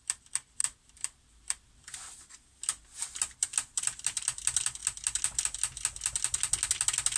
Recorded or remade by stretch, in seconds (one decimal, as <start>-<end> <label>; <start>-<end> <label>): 0.0-7.2 recorded